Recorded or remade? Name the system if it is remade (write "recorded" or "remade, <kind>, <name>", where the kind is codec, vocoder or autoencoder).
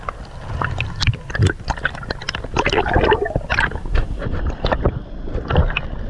recorded